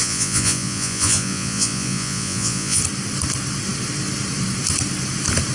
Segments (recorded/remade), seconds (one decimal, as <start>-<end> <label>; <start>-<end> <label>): 0.0-2.8 remade; 2.8-5.5 recorded